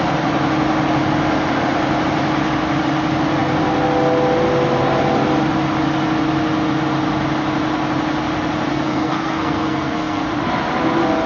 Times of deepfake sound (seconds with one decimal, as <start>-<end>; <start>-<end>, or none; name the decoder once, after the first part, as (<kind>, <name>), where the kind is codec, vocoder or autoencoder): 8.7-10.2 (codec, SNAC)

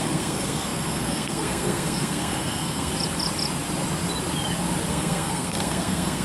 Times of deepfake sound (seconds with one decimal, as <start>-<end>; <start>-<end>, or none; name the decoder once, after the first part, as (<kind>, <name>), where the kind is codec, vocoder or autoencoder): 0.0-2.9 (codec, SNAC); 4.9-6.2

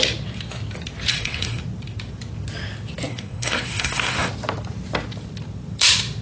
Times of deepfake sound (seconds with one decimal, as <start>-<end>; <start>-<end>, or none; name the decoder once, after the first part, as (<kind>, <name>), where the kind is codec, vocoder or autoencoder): 1.1-1.6 (codec, SNAC); 3.1-4.3

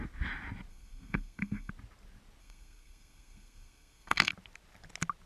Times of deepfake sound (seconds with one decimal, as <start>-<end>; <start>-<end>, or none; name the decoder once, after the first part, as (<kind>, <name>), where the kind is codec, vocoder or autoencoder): 0.7-1.7 (codec, SNAC); 2.4-4.3

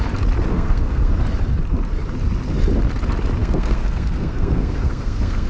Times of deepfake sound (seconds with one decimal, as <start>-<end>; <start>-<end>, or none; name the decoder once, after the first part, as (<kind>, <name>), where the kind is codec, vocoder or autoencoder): 0.5-1.1 (codec, SNAC); 3.4-5.5